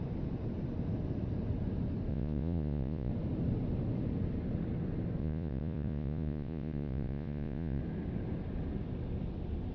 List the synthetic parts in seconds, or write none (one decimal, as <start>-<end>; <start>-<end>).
2.1-3.1; 5.2-7.8